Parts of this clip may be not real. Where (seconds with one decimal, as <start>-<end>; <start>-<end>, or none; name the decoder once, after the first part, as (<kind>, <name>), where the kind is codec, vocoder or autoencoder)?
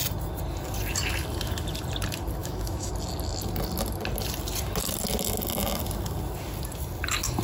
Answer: 2.4-2.9 (autoencoder, DAC-VAE)